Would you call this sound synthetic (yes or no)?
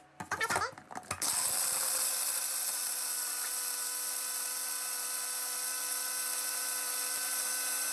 no